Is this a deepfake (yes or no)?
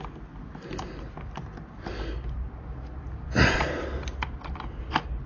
no